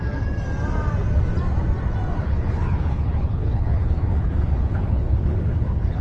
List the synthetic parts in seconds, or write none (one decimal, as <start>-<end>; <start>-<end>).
2.2-6.0